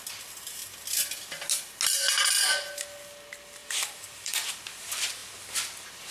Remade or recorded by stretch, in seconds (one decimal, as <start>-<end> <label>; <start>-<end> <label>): 0.0-3.6 recorded; 3.6-4.5 remade; 4.5-6.1 recorded